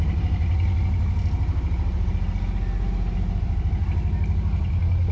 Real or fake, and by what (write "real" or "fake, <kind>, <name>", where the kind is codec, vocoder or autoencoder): real